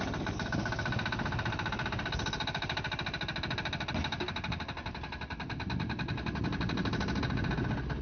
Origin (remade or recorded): recorded